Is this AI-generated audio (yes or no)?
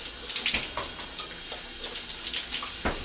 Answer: no